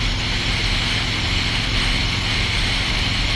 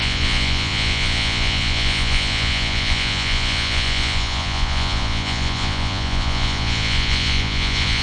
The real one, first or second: first